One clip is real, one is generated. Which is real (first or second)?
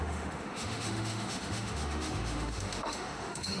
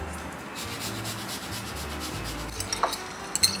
second